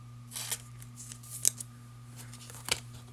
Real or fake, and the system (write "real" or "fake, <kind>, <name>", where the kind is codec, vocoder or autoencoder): real